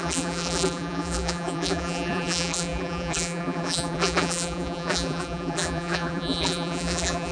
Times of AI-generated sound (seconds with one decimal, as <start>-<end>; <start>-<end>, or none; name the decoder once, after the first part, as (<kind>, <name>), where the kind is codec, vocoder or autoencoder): 0.0-7.3 (vocoder, BigVGAN v2)